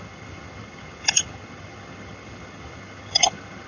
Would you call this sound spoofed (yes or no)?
yes